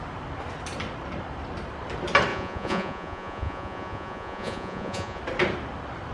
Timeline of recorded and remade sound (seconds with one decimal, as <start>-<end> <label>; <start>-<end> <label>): 0.0-2.3 recorded; 2.3-5.2 remade; 5.2-6.1 recorded